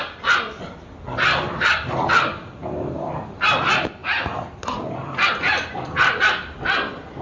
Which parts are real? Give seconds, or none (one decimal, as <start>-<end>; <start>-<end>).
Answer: 0.0-7.2